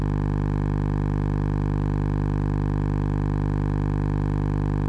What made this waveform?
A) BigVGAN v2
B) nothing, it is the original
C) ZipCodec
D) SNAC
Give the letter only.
B